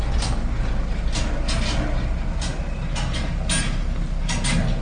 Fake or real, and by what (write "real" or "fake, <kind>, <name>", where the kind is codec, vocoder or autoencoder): real